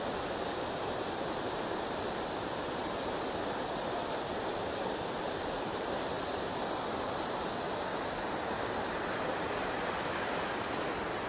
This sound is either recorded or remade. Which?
recorded